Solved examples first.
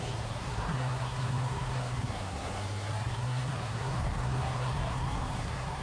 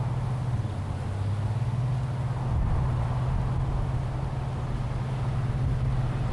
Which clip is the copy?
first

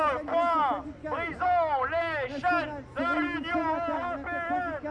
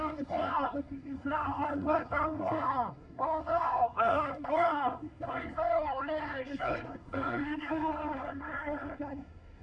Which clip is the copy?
second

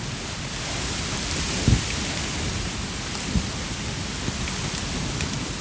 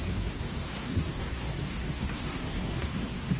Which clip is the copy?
second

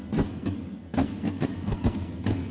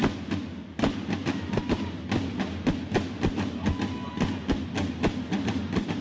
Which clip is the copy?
first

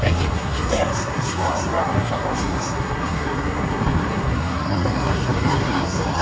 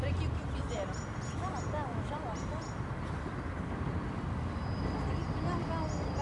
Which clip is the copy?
first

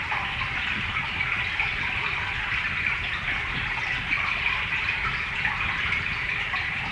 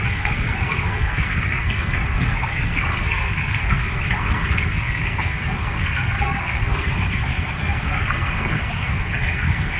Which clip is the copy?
second